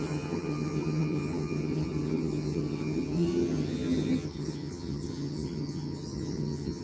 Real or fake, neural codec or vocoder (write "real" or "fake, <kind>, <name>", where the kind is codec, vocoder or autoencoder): fake, vocoder, HiFi-GAN